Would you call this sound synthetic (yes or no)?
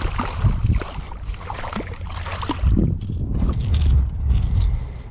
no